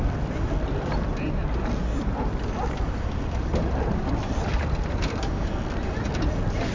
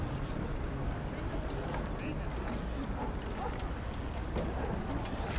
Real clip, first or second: second